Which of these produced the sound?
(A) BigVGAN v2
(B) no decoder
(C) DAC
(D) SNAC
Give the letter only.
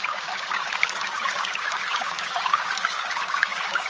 C